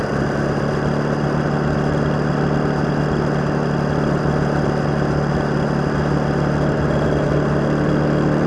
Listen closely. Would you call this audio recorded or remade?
recorded